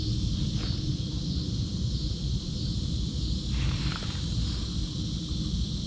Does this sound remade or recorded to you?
recorded